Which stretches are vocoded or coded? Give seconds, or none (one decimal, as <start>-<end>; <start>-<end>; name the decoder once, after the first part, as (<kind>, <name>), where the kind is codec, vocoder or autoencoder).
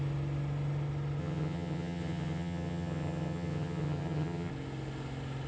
1.2-4.5 (vocoder, HiFi-GAN)